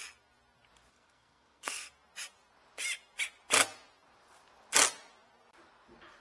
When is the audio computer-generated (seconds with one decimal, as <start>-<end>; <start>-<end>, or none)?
0.9-1.9